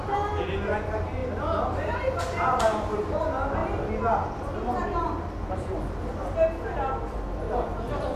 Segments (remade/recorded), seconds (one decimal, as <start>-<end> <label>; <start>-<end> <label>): 0.0-8.2 recorded